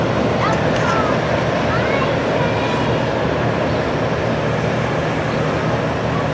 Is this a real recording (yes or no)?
yes